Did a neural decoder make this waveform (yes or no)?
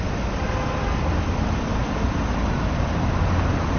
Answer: no